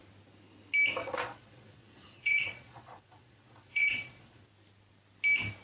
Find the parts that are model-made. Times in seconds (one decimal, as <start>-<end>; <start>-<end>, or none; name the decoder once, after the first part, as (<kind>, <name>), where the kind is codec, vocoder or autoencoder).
1.0-4.4 (vocoder, Vocos)